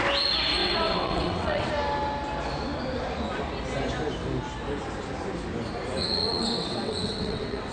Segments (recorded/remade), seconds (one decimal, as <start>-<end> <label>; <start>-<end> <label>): 0.0-0.6 recorded; 0.6-1.7 remade; 1.7-6.0 recorded; 6.0-7.7 remade